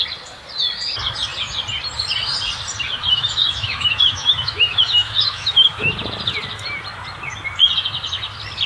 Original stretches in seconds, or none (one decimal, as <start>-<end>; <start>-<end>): 0.0-3.0; 5.9-8.7